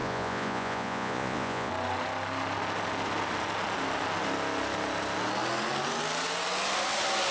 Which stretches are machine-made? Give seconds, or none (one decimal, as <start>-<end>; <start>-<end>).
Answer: 0.0-1.7